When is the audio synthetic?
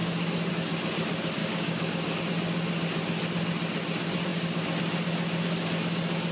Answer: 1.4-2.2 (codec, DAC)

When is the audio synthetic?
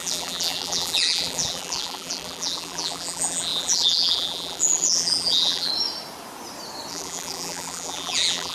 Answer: 0.0-5.7 (vocoder, BigVGAN v2); 6.9-8.5